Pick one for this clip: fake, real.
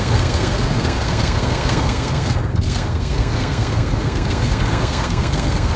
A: fake